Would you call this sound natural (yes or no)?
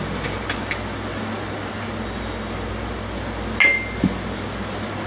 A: yes